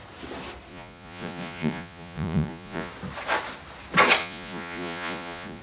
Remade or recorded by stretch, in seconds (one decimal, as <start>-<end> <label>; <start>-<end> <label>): 0.0-0.7 recorded; 0.7-2.9 remade; 2.9-4.2 recorded; 4.2-5.6 remade